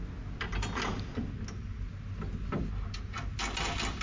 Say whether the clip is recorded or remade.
recorded